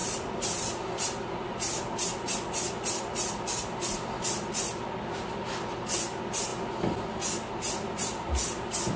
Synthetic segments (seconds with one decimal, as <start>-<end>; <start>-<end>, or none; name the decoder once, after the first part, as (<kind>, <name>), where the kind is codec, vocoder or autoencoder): none